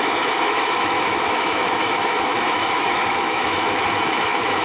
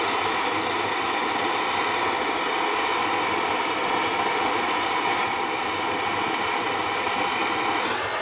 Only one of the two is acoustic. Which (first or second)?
second